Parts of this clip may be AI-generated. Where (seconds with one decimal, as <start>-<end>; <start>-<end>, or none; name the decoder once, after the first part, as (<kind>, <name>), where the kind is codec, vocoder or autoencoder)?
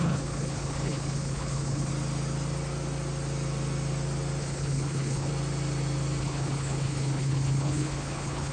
0.0-1.9 (codec, HILCodec); 4.4-5.3; 6.2-8.5